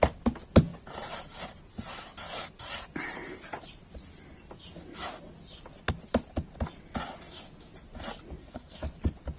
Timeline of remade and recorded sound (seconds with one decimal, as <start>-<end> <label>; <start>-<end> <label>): 0.0-8.4 recorded; 8.4-8.9 remade; 8.9-9.4 recorded